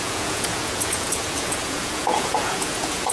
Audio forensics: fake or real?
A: fake